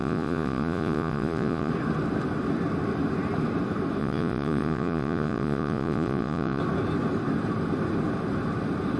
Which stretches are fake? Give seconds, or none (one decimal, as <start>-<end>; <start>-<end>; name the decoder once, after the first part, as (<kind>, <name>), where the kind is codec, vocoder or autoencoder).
0.0-1.7 (vocoder, Vocos); 4.0-6.6